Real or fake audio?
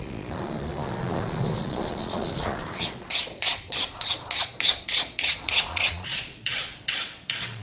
fake